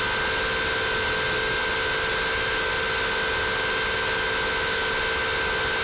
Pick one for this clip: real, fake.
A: real